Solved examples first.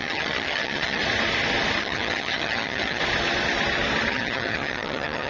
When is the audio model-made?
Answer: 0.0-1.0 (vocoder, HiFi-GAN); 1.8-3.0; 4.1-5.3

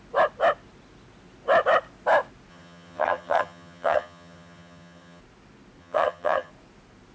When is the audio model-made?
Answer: 2.5-5.2 (vocoder, HiFi-GAN); 5.8-6.5